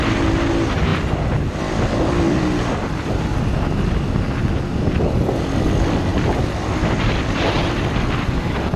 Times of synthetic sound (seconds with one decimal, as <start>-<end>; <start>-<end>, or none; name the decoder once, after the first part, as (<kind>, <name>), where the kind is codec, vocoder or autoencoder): none